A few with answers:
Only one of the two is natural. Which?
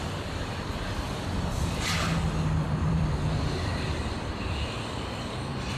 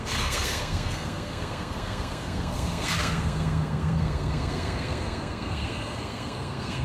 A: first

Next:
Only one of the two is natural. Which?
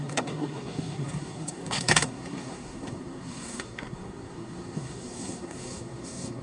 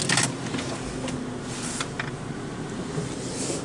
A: second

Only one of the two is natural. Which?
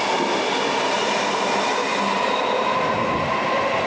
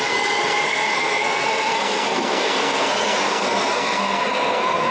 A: first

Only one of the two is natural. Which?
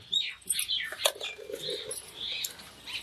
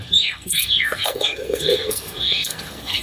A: first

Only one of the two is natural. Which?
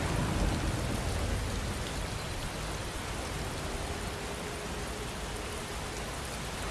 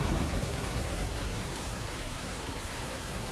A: first